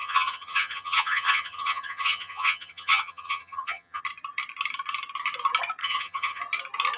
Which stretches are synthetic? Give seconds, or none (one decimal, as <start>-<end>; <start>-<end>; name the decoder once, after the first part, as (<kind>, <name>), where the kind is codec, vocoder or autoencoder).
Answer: 0.0-4.0 (vocoder, HiFi-GAN); 5.8-6.4